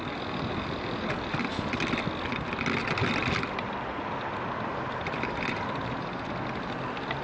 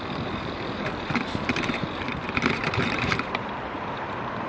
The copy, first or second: second